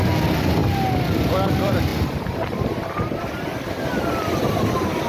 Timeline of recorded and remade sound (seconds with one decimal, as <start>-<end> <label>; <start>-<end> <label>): 0.0-0.6 remade; 0.6-1.1 recorded; 1.1-1.9 remade; 1.9-4.0 recorded; 4.0-5.1 remade